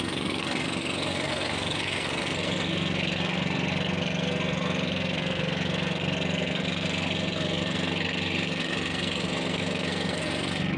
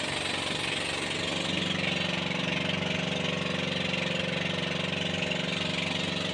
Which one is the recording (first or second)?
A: second